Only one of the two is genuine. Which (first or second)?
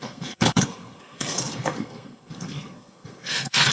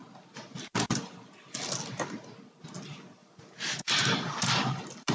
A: second